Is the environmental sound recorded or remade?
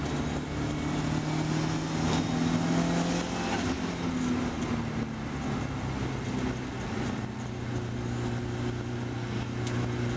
recorded